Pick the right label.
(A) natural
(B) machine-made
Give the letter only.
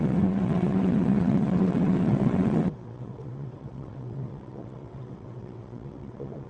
B